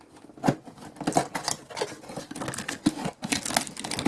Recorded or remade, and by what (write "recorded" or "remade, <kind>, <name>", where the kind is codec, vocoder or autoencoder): recorded